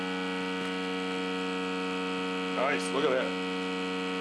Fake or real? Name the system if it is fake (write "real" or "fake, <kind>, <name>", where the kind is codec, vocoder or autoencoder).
real